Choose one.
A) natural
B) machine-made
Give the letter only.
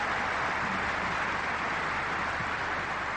A